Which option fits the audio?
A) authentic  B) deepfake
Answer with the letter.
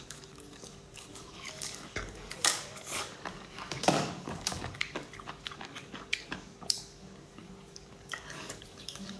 B